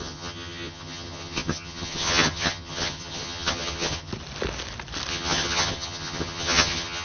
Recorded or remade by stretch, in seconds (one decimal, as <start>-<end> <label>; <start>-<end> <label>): 0.0-4.1 remade; 4.1-5.1 recorded; 5.1-7.0 remade